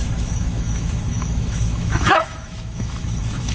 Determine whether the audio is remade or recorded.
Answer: remade